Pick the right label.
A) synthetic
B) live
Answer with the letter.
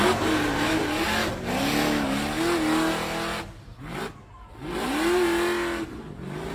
B